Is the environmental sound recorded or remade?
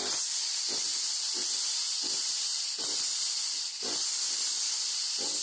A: recorded